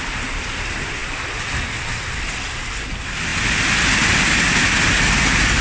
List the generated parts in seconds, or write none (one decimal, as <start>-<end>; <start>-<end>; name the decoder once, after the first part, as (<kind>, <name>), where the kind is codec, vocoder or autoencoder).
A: none